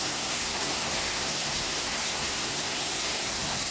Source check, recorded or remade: remade